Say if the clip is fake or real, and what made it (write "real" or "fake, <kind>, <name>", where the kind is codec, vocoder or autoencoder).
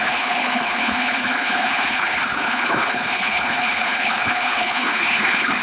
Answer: fake, codec, HILCodec